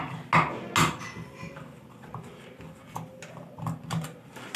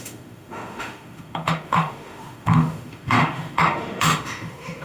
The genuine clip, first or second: first